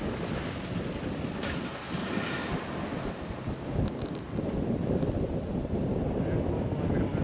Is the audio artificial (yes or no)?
no